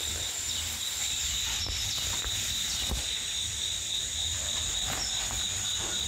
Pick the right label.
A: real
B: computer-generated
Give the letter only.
B